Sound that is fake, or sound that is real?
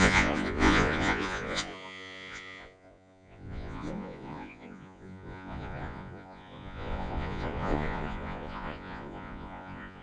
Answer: fake